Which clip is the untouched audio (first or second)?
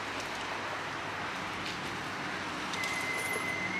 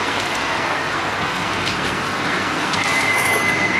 first